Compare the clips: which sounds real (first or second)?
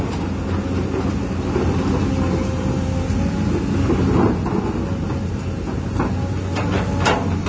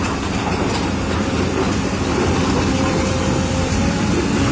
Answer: first